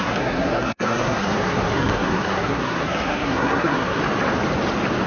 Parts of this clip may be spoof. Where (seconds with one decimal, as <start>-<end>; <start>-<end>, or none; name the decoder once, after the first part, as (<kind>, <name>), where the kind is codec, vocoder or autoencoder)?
0.0-4.0 (codec, SNAC)